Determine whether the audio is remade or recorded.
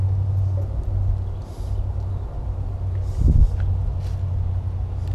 recorded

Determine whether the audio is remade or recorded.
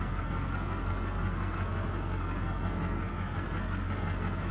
remade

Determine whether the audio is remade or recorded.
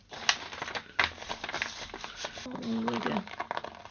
recorded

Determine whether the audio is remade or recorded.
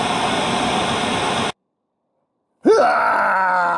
recorded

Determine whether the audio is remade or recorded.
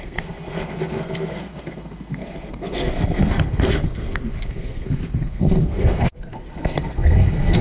remade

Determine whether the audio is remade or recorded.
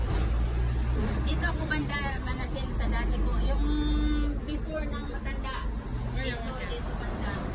recorded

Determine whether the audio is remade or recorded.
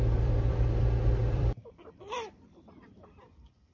remade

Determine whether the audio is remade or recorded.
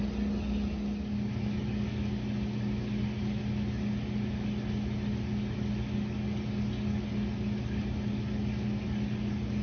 recorded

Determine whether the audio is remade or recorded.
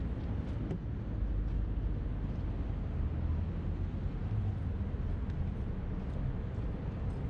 recorded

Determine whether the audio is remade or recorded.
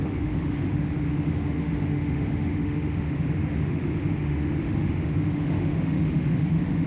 remade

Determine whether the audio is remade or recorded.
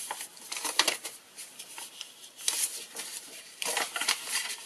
remade